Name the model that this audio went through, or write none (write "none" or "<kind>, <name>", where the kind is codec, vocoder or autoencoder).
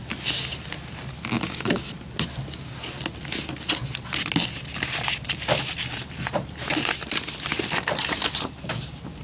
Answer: none